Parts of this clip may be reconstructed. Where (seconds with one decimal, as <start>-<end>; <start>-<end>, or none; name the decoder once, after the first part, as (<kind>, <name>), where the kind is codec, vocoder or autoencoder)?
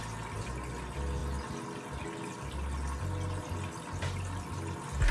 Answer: none